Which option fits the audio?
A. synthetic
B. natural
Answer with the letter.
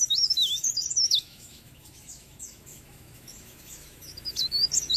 A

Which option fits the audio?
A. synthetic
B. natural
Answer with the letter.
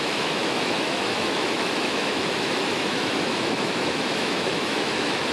A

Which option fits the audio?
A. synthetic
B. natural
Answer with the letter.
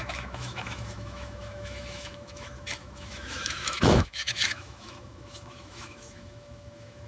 A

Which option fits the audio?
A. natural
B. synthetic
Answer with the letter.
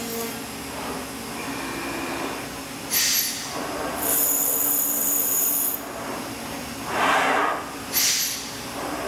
A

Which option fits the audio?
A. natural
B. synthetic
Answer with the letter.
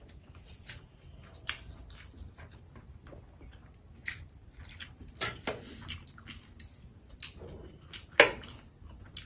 A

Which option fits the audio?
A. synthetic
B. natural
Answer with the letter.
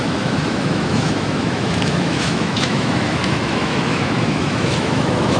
A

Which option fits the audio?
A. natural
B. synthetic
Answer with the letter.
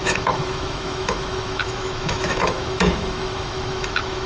B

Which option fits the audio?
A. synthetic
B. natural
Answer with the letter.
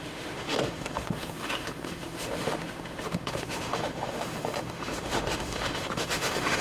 A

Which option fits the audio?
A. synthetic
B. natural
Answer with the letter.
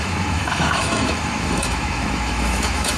A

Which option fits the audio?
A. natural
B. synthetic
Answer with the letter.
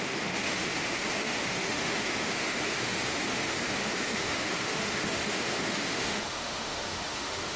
B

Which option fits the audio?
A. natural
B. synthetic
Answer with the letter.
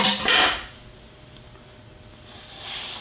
A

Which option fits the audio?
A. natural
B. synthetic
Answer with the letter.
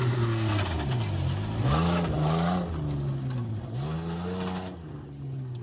A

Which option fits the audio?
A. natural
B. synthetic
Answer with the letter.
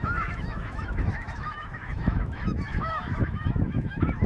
B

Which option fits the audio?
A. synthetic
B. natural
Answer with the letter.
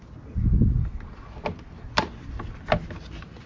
B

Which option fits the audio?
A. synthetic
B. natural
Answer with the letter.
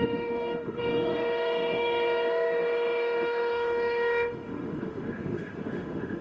A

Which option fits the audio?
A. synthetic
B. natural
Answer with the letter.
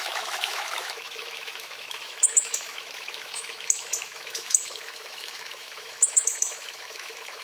A